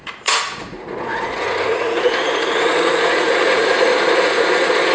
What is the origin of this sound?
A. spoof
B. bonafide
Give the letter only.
A